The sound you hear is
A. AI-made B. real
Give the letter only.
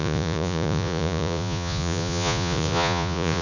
A